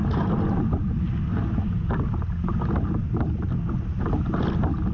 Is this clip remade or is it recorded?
recorded